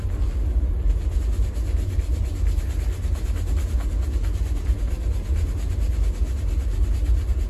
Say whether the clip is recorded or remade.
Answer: recorded